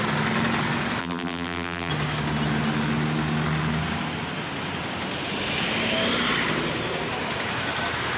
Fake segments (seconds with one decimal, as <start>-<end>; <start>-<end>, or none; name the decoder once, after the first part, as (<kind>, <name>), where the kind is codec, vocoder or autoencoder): 1.0-1.9 (vocoder, BigVGAN v2)